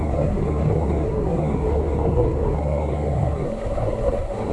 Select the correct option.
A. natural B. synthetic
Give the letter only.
B